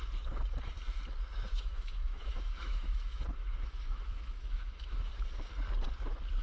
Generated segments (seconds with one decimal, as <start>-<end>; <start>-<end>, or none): 1.3-5.1